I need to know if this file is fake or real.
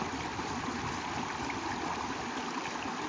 real